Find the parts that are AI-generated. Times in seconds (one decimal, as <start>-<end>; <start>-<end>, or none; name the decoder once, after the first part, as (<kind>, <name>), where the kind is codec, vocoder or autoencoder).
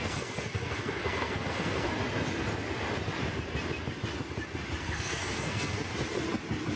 0.0-2.0 (codec, SNAC); 4.8-5.9